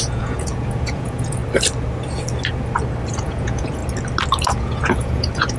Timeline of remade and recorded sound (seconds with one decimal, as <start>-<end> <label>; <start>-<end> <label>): 0.0-1.4 remade; 1.4-3.1 recorded; 3.1-3.8 remade; 3.8-4.6 recorded; 4.6-5.6 remade

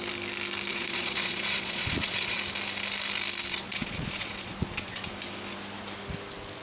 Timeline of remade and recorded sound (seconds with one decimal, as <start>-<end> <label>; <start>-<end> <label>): 0.0-0.7 recorded; 0.7-2.4 remade; 2.4-3.5 recorded; 3.5-5.1 remade; 5.1-6.6 recorded

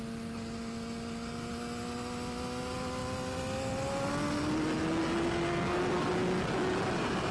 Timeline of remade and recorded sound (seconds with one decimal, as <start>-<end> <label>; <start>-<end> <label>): 0.0-7.3 recorded